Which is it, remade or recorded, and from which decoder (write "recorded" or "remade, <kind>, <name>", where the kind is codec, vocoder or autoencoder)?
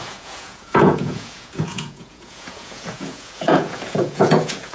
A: remade, vocoder, Vocos